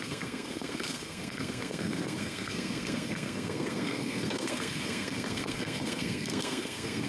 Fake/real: fake